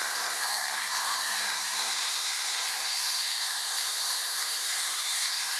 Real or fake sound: fake